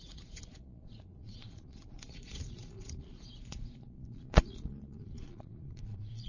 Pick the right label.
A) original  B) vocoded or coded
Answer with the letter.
B